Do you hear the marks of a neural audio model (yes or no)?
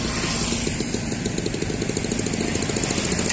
no